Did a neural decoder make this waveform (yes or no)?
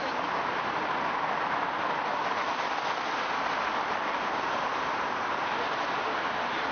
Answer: no